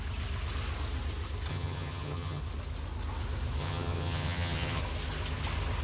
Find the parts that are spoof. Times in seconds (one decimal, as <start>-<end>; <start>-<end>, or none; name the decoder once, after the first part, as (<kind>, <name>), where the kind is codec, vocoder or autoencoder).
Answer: 1.5-2.4 (vocoder, HiFi-GAN); 3.6-4.8